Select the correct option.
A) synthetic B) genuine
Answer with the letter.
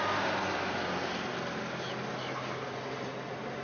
B